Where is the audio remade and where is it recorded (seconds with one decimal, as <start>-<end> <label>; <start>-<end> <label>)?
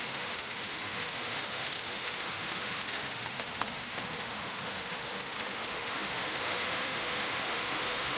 0.0-8.2 remade